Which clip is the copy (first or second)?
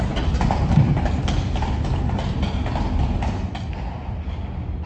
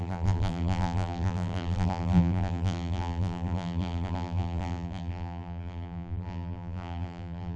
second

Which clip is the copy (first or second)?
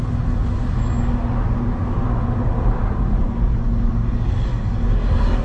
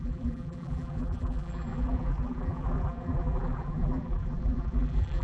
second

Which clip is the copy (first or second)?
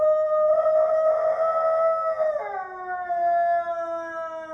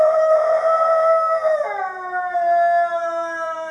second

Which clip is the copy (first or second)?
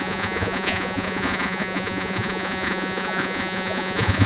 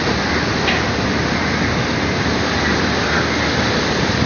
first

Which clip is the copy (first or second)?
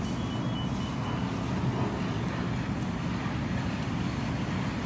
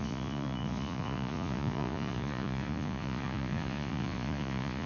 second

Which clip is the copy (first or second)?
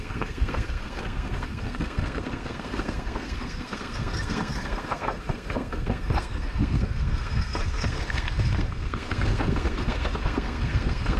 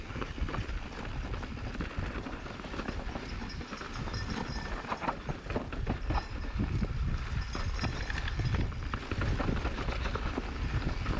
first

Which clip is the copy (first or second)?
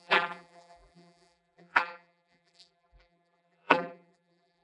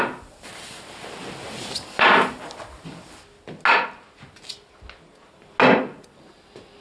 first